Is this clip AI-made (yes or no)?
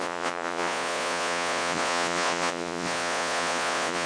yes